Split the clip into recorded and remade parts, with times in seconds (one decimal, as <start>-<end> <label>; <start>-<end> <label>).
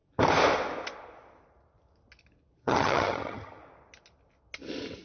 0.0-2.6 recorded; 2.6-3.6 remade; 3.6-5.0 recorded